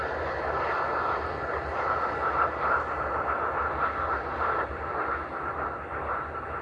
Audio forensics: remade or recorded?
recorded